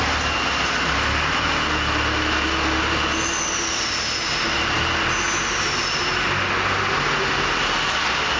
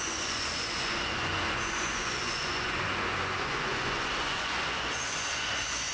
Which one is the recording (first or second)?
first